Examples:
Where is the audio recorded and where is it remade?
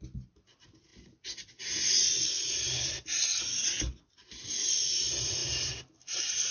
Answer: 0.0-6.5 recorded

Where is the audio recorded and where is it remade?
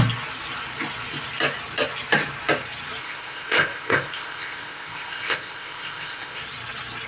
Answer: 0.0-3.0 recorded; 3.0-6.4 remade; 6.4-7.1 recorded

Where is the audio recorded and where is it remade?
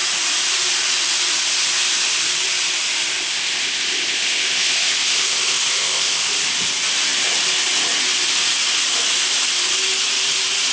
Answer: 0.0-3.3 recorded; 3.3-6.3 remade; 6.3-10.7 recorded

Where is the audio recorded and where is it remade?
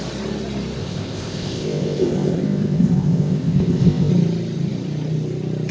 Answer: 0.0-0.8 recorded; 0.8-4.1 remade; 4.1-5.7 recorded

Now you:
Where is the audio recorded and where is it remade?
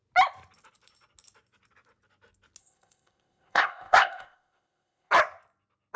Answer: 0.0-2.6 recorded; 2.6-5.1 remade; 5.1-6.0 recorded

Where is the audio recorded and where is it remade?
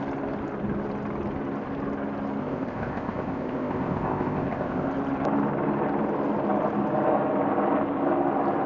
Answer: 0.0-2.4 recorded; 2.4-4.9 remade; 4.9-8.7 recorded